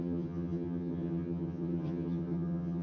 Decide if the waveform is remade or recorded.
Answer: remade